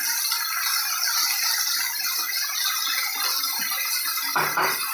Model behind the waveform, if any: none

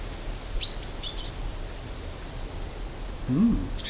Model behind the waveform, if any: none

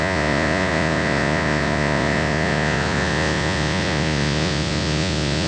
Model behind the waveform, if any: vocoder, Vocos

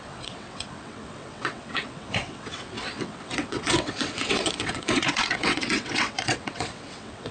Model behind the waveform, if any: vocoder, WaveNeXt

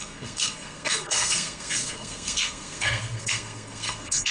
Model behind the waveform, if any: codec, SNAC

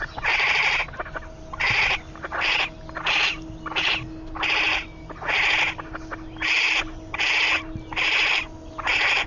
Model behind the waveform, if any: none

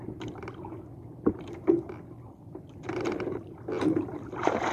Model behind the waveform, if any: vocoder, BigVGAN v2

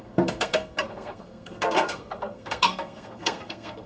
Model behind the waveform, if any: codec, SNAC